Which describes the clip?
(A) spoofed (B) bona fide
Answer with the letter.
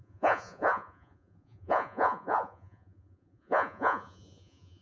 A